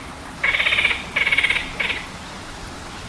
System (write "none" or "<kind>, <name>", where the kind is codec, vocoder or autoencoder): none